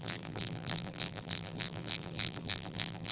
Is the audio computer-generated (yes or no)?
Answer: yes